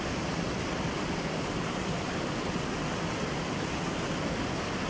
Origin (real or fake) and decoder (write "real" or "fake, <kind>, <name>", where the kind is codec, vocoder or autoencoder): real